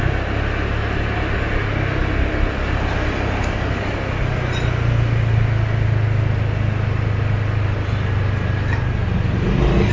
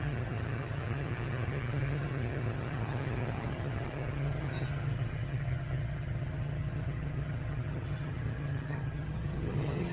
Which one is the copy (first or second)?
second